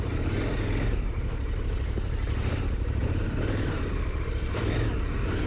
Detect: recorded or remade remade